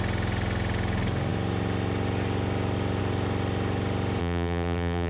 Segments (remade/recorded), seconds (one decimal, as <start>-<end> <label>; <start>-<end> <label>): 0.0-4.2 recorded; 4.2-5.1 remade